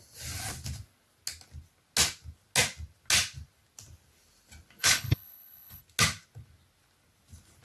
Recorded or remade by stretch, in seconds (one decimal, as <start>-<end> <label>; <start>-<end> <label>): 0.0-4.8 recorded; 4.8-5.8 remade; 5.8-7.6 recorded